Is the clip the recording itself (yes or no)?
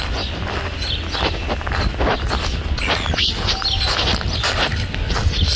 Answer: yes